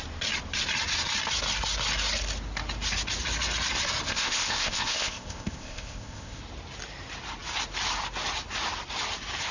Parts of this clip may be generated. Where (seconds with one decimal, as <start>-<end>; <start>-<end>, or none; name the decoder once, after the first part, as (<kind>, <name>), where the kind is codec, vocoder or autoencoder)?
4.1-6.4 (codec, ZipCodec)